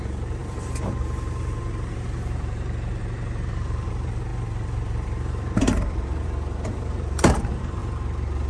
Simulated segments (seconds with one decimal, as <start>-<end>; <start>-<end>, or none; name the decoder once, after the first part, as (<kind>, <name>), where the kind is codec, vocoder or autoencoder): 0.0-7.8 (vocoder, BigVGAN v2)